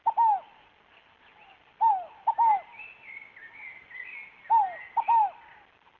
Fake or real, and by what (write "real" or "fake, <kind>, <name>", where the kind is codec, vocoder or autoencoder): real